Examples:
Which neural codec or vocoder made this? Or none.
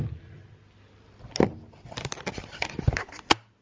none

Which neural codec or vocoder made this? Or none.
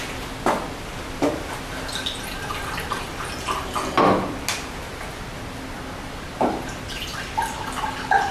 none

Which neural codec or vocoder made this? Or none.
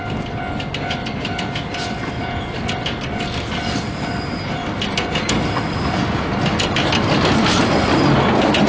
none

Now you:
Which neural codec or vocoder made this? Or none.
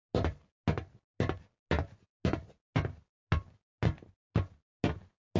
none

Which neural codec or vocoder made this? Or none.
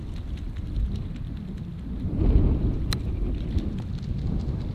none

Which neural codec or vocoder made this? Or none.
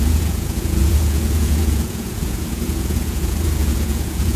vocoder, Vocos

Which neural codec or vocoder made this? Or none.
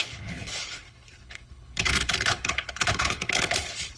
codec, HILCodec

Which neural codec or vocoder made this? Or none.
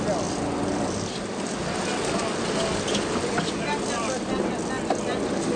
none